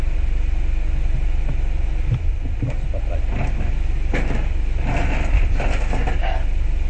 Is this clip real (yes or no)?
yes